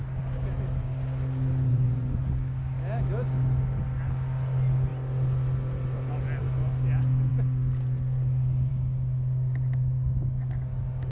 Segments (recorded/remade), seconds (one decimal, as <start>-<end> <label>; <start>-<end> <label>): 0.0-1.7 recorded; 1.7-2.2 remade; 2.2-11.1 recorded